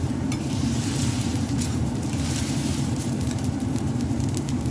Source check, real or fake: fake